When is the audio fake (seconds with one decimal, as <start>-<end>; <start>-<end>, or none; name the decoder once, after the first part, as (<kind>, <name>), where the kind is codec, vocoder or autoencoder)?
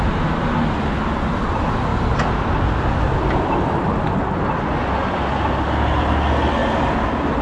none